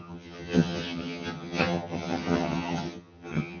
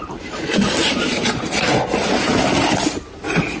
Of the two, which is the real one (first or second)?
second